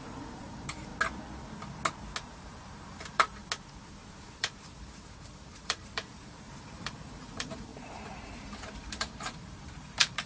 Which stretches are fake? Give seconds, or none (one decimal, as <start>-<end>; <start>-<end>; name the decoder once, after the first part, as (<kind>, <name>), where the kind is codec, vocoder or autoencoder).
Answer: 0.0-0.9 (vocoder, BigVGAN v2); 2.2-3.4; 4.1-10.3